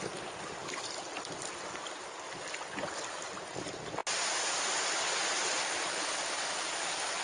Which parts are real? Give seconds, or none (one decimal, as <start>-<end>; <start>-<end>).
0.0-0.6; 2.0-7.2